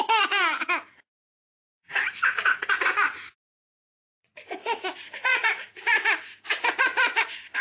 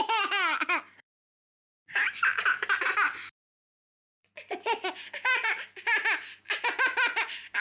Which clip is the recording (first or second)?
second